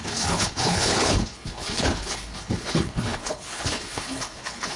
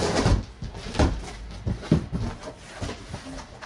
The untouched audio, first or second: second